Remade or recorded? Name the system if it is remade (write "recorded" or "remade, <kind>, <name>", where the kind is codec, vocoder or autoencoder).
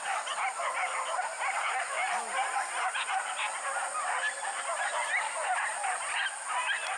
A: recorded